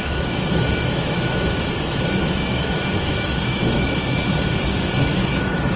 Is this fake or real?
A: fake